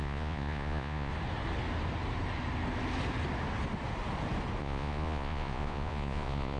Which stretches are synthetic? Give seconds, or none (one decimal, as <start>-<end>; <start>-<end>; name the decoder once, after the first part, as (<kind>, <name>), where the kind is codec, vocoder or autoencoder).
0.0-1.1 (vocoder, Vocos); 4.6-6.6